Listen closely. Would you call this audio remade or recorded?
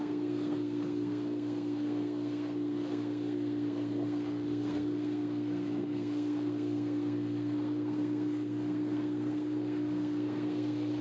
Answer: remade